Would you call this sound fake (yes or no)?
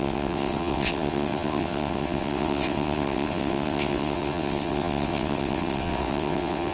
yes